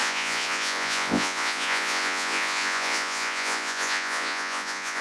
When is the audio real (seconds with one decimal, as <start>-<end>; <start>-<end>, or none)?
none